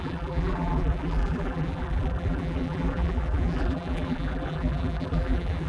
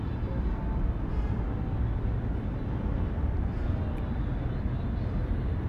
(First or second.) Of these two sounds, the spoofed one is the first